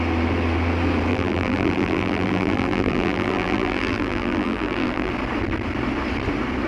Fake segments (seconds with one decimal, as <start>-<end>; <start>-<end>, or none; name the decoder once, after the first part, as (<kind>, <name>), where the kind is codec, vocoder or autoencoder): 1.1-5.1 (vocoder, BigVGAN v2)